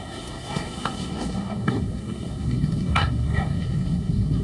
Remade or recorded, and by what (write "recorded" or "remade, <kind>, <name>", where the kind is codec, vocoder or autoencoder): remade, codec, SNAC